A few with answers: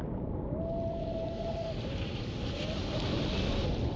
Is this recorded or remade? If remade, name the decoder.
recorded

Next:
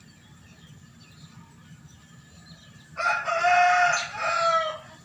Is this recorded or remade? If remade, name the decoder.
recorded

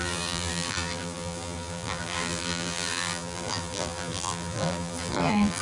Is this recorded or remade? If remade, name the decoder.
remade, vocoder, BigVGAN v2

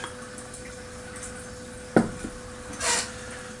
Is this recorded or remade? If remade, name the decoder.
recorded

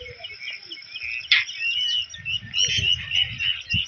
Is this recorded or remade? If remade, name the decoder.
recorded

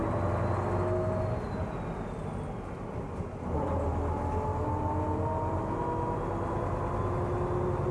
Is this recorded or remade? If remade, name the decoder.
recorded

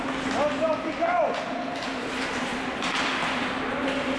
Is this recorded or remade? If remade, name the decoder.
recorded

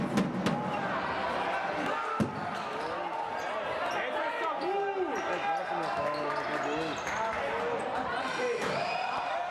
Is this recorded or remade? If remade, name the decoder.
recorded